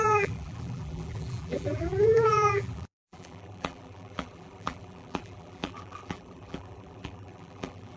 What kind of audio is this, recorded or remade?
remade